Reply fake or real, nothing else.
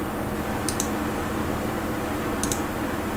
real